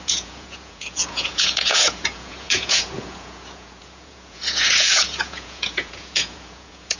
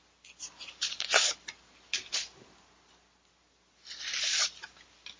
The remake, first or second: first